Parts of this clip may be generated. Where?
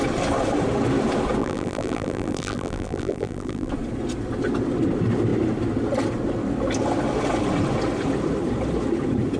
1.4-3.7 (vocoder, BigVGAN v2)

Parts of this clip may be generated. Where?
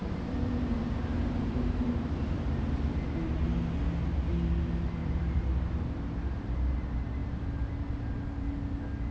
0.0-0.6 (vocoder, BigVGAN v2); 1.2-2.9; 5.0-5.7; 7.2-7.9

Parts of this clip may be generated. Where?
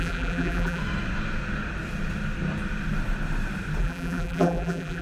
0.0-0.8 (vocoder, BigVGAN v2); 3.8-5.0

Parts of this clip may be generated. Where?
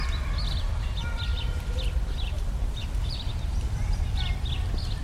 1.3-4.3 (vocoder, BigVGAN v2)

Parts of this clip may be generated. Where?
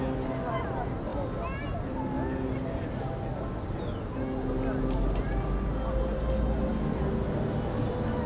none